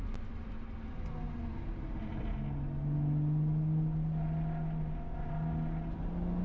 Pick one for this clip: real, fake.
real